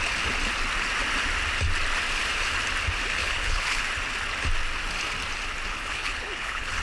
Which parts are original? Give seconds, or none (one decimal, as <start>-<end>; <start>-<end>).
0.0-3.2; 3.8-5.7